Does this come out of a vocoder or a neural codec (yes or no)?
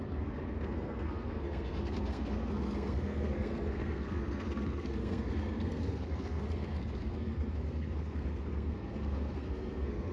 yes